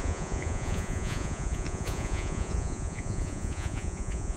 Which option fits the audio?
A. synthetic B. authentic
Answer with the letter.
A